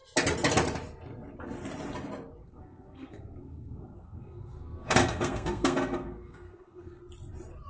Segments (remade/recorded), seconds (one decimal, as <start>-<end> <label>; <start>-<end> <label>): 0.0-2.4 recorded; 2.4-7.0 remade; 7.0-7.7 recorded